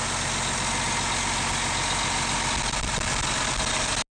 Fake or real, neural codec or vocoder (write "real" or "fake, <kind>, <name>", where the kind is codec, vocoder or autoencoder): real